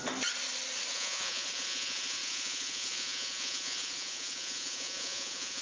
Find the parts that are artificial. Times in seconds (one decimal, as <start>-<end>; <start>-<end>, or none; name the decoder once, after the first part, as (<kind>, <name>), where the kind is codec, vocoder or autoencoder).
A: 0.9-5.6 (vocoder, Vocos)